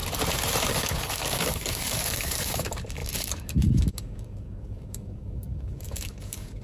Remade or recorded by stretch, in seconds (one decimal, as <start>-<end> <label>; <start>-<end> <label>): 0.0-0.7 recorded; 0.7-6.6 remade